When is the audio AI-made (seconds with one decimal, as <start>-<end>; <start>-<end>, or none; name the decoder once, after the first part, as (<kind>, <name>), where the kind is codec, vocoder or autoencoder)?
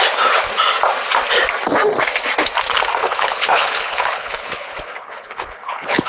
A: 3.0-6.1 (codec, HILCodec)